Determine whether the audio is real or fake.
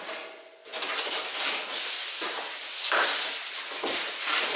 real